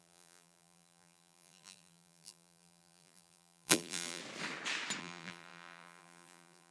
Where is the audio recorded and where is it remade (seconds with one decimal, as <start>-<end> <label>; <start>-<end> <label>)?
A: 0.0-4.2 remade; 4.2-5.0 recorded; 5.0-6.7 remade